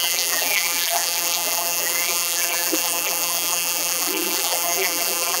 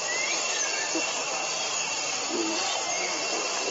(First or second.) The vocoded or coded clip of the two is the first